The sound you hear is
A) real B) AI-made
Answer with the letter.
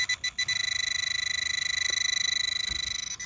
A